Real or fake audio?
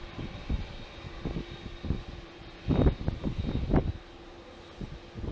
real